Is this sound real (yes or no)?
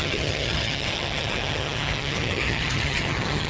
no